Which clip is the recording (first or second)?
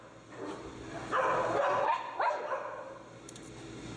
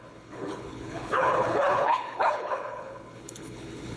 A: first